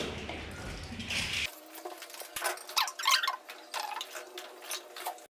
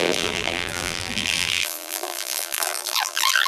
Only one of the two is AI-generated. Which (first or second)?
second